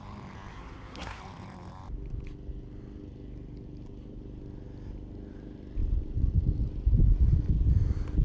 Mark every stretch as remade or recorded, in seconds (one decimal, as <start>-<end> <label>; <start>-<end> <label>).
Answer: 0.0-0.5 recorded; 0.5-1.2 remade; 1.2-8.2 recorded